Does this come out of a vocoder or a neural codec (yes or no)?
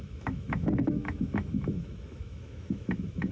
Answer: yes